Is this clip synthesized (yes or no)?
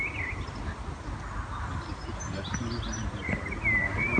no